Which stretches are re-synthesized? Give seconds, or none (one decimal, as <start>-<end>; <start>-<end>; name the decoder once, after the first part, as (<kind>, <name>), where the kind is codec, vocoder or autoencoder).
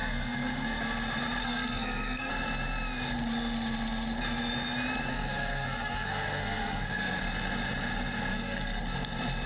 0.0-0.8 (codec, SNAC); 1.4-2.3; 5.1-7.2; 8.3-8.8